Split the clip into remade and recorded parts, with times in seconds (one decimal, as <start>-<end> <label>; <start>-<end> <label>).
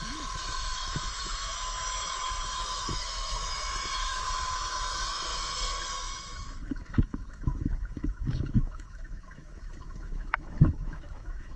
0.0-5.3 remade; 5.3-5.9 recorded; 5.9-11.6 remade